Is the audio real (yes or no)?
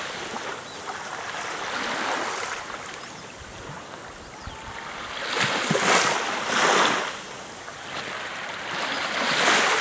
yes